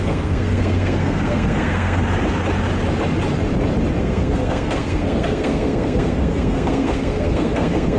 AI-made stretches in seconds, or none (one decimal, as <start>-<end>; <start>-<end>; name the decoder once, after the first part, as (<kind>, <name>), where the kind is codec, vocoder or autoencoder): 0.0-2.0 (codec, SNAC); 4.0-8.0